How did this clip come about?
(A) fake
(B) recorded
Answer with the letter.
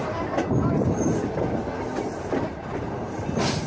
B